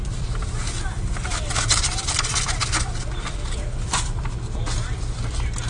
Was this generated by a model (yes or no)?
yes